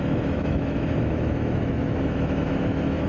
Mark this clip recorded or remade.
remade